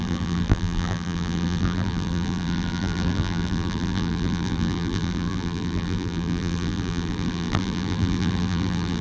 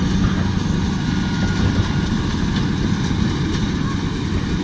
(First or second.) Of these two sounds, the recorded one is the second